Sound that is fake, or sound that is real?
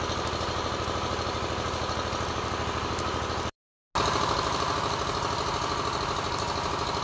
real